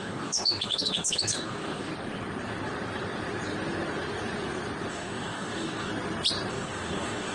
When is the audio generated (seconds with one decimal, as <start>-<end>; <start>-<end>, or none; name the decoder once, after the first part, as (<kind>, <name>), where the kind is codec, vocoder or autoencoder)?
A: 0.0-1.9 (codec, DAC); 4.9-5.9; 6.5-7.3